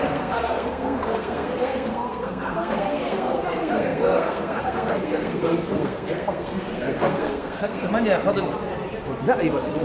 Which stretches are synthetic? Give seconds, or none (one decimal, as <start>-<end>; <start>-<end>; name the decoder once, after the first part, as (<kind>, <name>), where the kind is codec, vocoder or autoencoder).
0.0-7.9 (codec, SNAC)